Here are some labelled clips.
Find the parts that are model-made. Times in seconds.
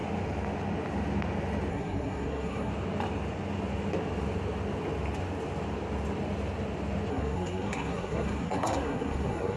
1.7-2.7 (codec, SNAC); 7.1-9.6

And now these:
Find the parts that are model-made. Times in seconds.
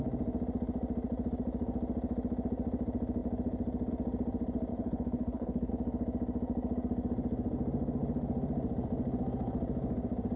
4.7-5.7 (codec, HILCodec)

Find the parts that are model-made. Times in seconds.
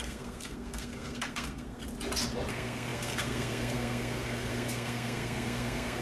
0.0-1.8 (codec, SNAC); 2.5-6.0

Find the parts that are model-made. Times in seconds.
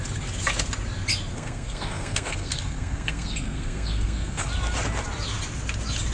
1.3-4.5 (codec, SNAC)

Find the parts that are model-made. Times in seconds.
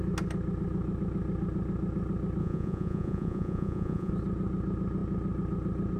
2.4-4.1 (vocoder, Vocos)